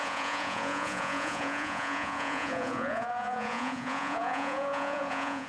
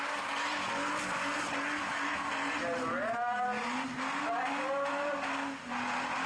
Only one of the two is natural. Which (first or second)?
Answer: second